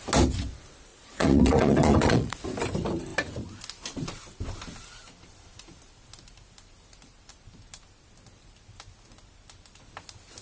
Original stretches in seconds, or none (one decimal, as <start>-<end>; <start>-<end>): 0.0-0.9; 2.3-10.4

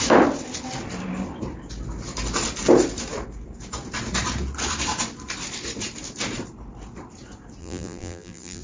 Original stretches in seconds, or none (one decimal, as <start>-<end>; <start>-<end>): 0.0-7.6

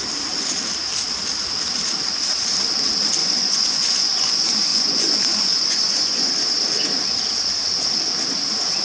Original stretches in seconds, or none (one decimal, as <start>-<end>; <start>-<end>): 0.0-3.2; 4.3-4.7; 6.3-8.8

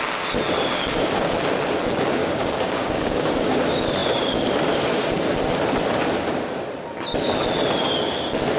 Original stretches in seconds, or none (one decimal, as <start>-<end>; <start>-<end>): 0.0-0.7; 1.3-2.2; 3.6-8.6

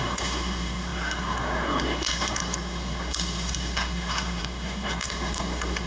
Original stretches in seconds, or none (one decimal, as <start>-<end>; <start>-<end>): none